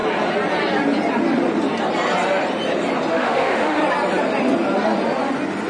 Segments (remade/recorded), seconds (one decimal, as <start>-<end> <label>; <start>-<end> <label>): 0.0-3.1 recorded; 3.1-3.8 remade; 3.8-5.7 recorded